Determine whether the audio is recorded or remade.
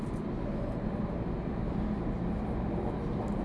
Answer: recorded